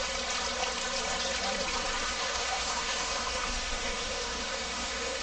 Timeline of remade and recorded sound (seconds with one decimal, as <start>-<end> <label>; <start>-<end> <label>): 0.0-2.0 recorded; 2.0-5.2 remade